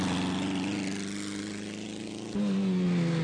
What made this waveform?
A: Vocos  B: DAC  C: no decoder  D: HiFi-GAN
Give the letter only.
C